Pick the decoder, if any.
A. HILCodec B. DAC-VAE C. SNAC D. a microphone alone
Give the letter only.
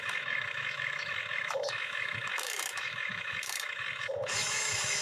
B